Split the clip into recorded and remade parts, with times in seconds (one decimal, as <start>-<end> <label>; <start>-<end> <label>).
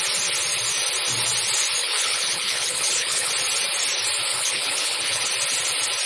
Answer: 0.0-1.8 recorded; 1.8-3.3 remade; 3.3-4.3 recorded; 4.3-5.2 remade; 5.2-6.1 recorded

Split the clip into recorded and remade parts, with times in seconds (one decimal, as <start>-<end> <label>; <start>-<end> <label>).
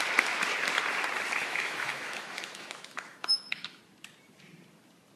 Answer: 0.0-1.4 recorded; 1.4-3.8 remade; 3.8-5.2 recorded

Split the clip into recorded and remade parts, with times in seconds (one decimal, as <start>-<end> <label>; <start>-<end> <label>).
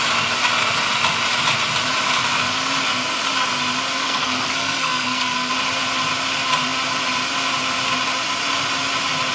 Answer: 0.0-4.0 recorded; 4.0-5.5 remade; 5.5-9.3 recorded